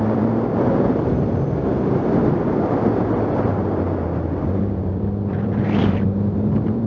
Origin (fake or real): fake